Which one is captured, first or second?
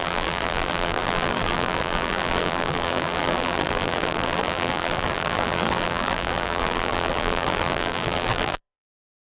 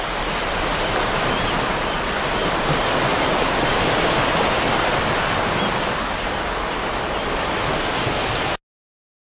second